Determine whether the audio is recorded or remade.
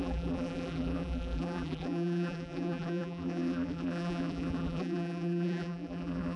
remade